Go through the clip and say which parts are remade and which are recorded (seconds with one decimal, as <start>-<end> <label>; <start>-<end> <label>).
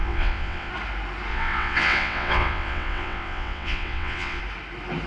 0.0-0.7 remade; 0.7-1.3 recorded; 1.3-4.4 remade; 4.4-5.1 recorded